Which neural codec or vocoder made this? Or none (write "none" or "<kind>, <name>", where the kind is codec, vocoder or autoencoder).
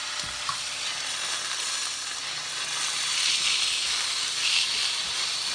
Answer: none